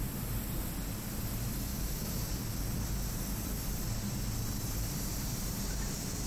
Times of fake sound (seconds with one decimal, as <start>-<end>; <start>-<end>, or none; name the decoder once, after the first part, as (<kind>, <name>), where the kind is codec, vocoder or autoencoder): 1.7-2.3 (autoencoder, DAC-VAE)